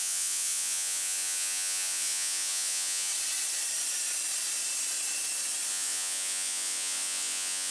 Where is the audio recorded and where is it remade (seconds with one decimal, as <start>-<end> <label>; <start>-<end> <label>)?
0.0-3.1 remade; 3.1-5.7 recorded; 5.7-7.7 remade